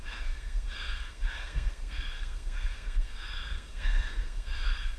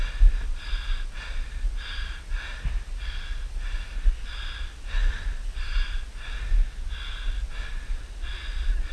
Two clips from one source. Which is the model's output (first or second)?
first